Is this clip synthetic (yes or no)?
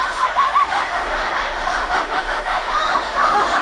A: yes